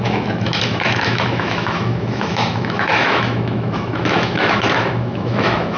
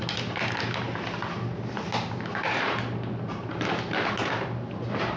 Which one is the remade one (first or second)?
first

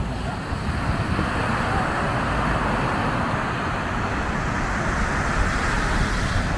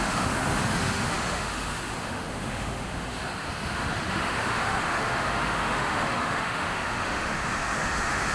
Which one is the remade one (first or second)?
second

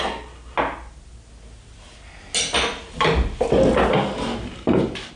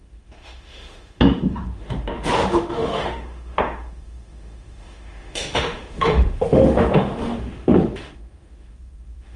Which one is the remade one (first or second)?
second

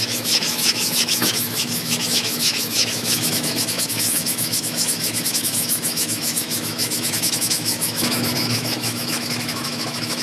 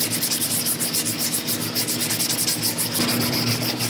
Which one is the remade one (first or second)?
first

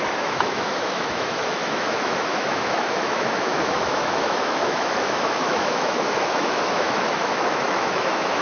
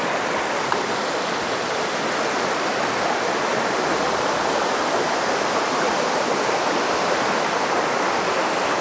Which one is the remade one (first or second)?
first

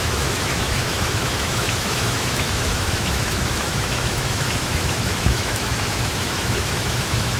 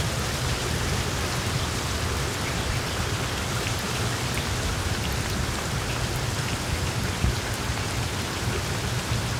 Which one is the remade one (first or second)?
first